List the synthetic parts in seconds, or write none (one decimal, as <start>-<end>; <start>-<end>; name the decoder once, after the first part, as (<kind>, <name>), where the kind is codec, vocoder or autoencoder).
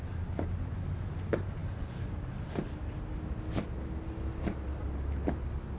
none